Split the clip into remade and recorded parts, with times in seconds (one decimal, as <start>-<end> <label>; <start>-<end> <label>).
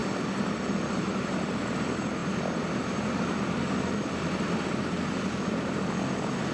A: 0.0-6.5 recorded